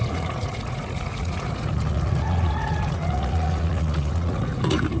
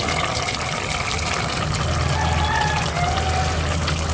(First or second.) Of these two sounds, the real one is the second